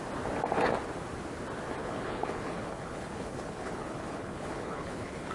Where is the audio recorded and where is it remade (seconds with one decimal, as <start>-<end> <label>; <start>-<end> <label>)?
0.0-1.8 recorded; 1.8-5.3 remade